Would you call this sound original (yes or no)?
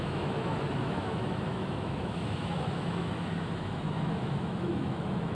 no